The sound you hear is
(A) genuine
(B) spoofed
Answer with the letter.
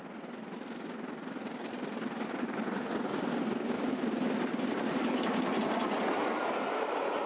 A